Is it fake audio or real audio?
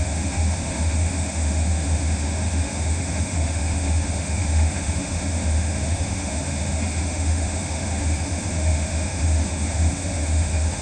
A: fake